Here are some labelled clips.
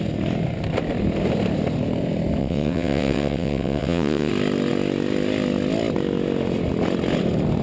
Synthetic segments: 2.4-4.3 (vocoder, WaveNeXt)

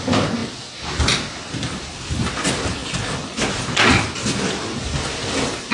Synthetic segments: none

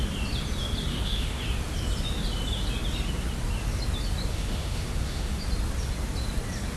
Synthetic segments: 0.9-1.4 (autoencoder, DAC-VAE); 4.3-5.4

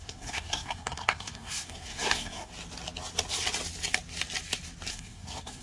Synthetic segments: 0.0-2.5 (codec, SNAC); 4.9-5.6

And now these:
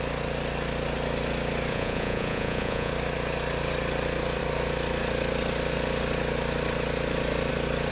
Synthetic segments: 1.7-2.9 (vocoder, Vocos)